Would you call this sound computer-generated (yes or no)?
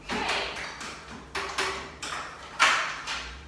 yes